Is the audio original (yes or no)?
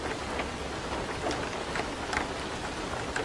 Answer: yes